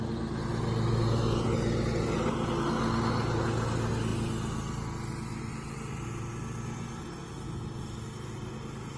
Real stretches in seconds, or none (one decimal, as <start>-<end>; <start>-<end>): 0.0-9.0